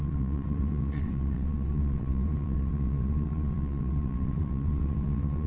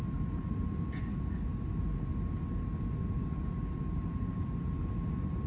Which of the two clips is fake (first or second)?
first